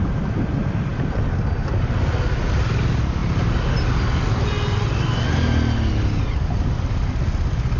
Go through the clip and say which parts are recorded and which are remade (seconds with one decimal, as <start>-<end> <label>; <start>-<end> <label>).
0.0-7.8 recorded